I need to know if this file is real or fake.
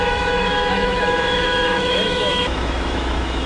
fake